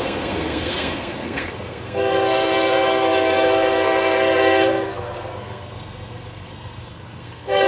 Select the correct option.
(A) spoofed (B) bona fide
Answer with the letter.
A